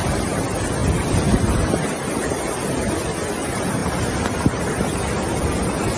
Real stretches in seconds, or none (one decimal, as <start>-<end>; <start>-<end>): 0.0-6.0